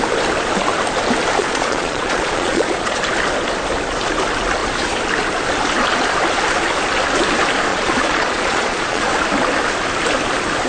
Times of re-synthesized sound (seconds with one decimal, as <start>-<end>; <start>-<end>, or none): 1.4-3.0; 7.7-9.1